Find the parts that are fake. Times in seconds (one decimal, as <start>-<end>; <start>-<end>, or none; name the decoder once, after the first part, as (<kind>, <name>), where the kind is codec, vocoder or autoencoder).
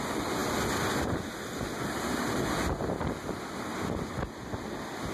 none